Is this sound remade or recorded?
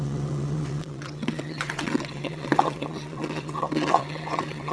remade